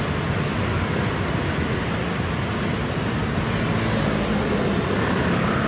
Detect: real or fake real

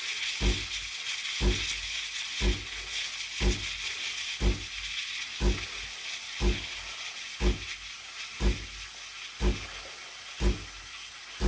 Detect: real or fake real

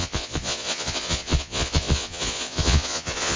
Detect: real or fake fake